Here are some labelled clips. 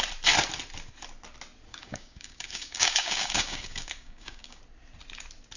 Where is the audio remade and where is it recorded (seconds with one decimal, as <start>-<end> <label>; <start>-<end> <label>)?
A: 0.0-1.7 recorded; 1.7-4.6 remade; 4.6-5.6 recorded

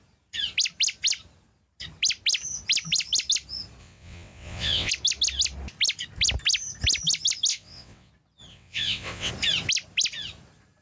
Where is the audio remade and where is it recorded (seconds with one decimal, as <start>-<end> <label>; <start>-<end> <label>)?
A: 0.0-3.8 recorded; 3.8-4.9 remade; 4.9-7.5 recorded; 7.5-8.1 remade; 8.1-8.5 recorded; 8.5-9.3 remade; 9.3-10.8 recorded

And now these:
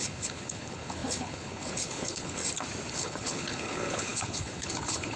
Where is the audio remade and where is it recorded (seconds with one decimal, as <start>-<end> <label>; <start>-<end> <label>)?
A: 0.0-2.4 remade; 2.4-2.9 recorded; 2.9-5.2 remade

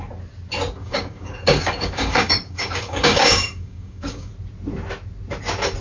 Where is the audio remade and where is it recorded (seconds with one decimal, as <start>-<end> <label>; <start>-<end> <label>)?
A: 0.0-0.8 recorded; 0.8-4.3 remade; 4.3-5.8 recorded